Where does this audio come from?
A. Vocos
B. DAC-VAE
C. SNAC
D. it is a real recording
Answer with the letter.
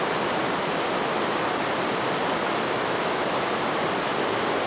D